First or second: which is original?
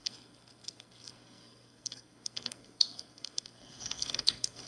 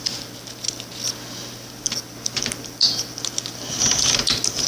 second